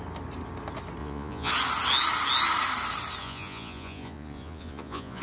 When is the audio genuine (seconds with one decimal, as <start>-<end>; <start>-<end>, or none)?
0.0-1.0; 1.5-3.2